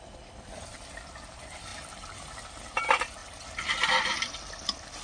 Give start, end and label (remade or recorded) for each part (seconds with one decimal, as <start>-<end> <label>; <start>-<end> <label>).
0.0-1.7 recorded; 1.7-2.8 remade; 2.8-5.0 recorded